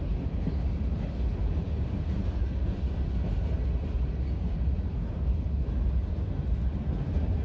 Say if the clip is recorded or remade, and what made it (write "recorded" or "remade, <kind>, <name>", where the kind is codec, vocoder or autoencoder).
recorded